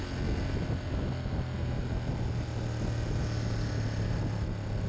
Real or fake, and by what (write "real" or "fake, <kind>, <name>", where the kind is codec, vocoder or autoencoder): real